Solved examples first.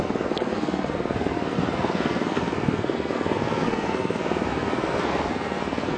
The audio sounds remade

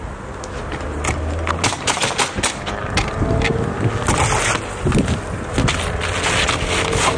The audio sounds recorded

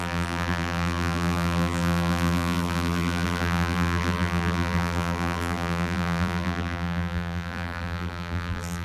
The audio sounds remade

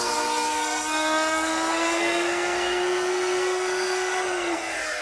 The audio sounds remade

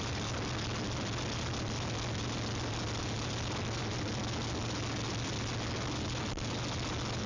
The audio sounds recorded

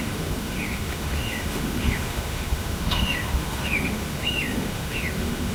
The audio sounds remade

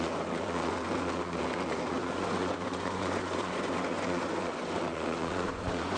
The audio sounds remade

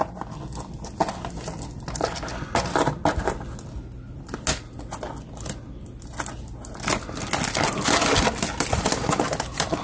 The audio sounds recorded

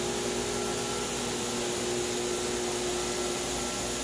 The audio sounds recorded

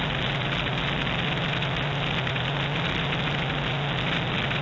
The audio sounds recorded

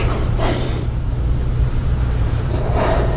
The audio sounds remade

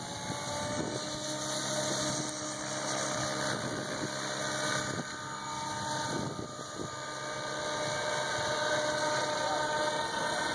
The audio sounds recorded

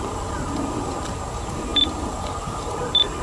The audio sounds recorded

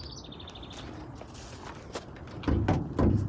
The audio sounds recorded